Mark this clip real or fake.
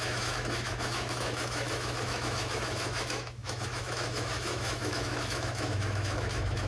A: fake